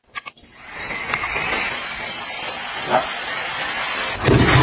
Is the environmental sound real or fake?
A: real